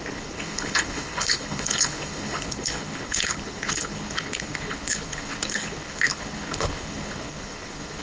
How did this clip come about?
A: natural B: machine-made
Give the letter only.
B